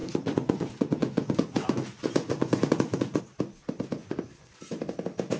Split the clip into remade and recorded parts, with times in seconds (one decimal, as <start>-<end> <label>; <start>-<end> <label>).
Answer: 0.0-3.2 remade; 3.2-4.0 recorded; 4.0-4.5 remade; 4.5-5.4 recorded